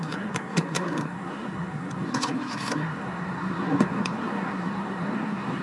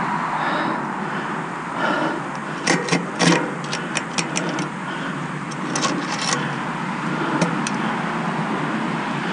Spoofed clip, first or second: first